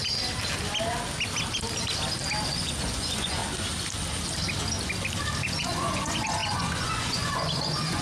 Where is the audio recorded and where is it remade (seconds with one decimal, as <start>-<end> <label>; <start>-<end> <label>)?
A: 0.0-2.5 recorded; 2.5-3.4 remade; 3.4-5.4 recorded; 5.4-8.0 remade